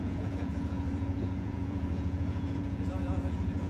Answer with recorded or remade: remade